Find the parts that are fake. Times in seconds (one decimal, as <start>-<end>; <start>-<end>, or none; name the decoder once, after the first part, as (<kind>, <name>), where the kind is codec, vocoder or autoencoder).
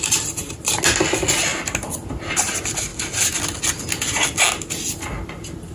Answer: none